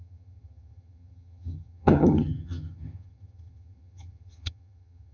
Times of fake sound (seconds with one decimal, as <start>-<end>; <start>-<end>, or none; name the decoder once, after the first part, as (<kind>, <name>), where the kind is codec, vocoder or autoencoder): 0.0-5.1 (vocoder, HiFi-GAN)